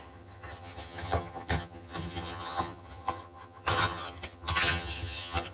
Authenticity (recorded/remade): remade